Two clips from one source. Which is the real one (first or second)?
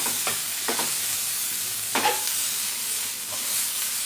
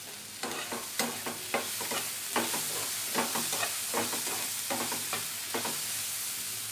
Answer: second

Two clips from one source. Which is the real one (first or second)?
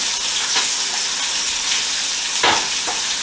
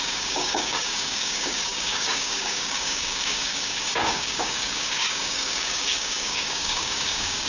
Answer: first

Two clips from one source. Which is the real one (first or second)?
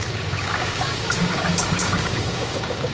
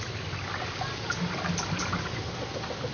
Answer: second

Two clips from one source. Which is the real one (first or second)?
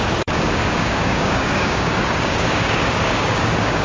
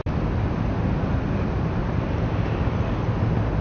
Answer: second